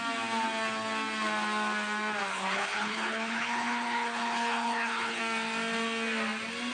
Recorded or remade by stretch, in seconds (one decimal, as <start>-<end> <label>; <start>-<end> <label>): 0.0-2.3 recorded; 2.3-5.2 remade; 5.2-6.7 recorded

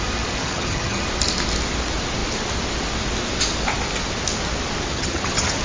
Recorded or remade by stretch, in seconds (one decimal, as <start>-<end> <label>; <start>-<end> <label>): 0.0-0.4 recorded; 0.4-1.0 remade; 1.0-4.9 recorded; 4.9-5.6 remade

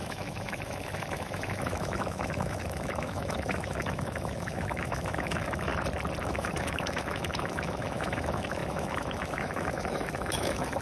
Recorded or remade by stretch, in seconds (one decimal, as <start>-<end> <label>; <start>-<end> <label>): 0.0-5.7 remade; 5.7-6.2 recorded; 6.2-10.8 remade

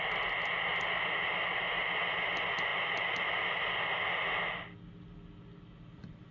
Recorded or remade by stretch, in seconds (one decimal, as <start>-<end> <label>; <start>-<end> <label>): 0.0-6.3 recorded

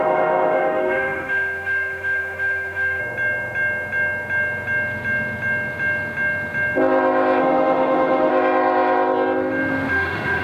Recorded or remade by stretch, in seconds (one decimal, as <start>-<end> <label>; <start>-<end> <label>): 0.0-3.0 remade; 3.0-7.4 recorded; 7.4-8.3 remade; 8.3-9.9 recorded; 9.9-10.4 remade

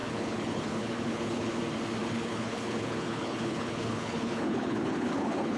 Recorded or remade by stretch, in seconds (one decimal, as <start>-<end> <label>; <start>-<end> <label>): 0.0-1.6 remade; 1.6-2.0 recorded; 2.0-5.6 remade